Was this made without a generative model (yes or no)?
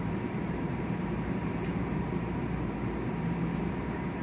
no